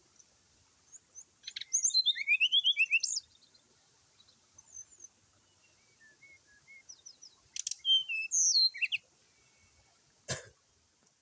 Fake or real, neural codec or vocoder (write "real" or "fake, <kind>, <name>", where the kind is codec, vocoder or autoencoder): real